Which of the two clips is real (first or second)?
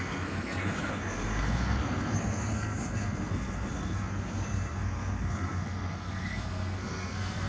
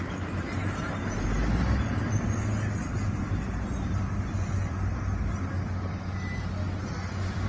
second